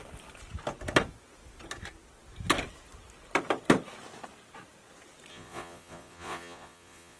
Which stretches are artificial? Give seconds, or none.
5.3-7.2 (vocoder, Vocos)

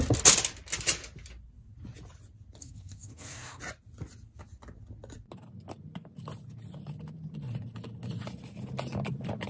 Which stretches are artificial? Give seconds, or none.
2.6-3.6 (codec, SNAC)

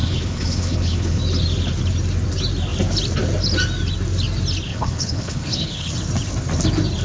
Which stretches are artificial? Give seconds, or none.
0.0-1.2 (codec, HILCodec); 4.7-5.9

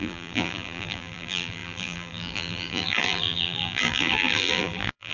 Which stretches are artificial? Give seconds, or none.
0.0-5.1 (vocoder, BigVGAN v2)